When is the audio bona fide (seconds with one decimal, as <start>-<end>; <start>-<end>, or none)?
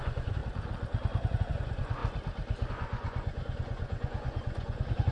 0.4-1.4; 2.0-2.7